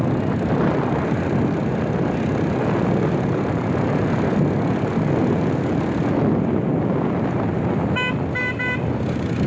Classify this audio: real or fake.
real